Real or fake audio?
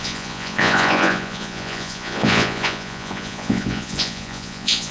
fake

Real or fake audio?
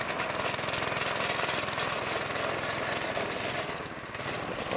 real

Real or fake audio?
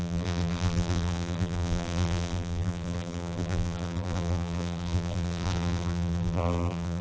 fake